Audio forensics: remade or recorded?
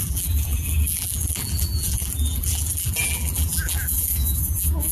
remade